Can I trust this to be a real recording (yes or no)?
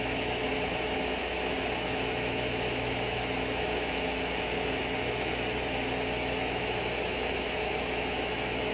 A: no